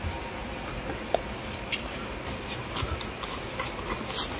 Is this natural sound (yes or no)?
yes